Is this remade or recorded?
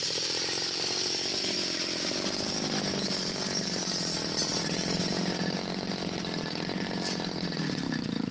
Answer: remade